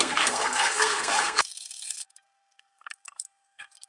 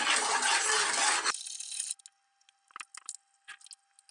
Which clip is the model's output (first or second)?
first